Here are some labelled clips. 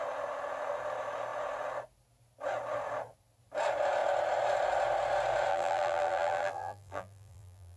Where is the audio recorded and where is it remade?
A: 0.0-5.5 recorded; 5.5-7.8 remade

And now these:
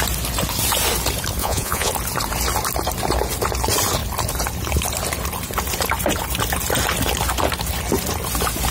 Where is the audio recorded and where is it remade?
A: 0.0-1.4 recorded; 1.4-1.9 remade; 1.9-8.7 recorded